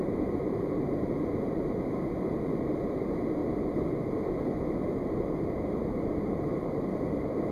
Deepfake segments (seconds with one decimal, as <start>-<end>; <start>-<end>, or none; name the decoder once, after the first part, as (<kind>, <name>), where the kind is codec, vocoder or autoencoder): 0.0-3.4 (vocoder, BigVGAN v2); 4.8-7.5